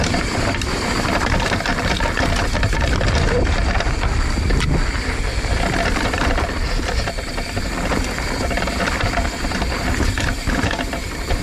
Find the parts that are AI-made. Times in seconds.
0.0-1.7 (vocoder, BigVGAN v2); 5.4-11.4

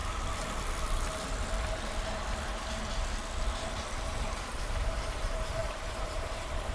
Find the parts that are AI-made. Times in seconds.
4.0-6.7 (vocoder, BigVGAN v2)

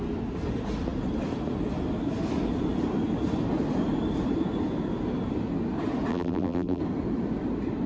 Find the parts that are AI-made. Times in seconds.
6.1-6.8 (vocoder, BigVGAN v2)

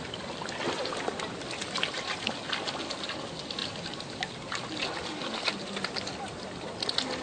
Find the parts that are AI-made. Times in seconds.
none

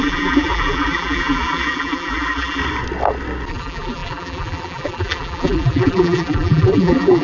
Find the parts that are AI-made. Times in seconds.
0.0-2.6 (vocoder, BigVGAN v2); 3.5-7.2

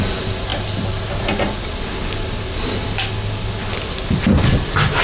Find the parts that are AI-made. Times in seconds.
none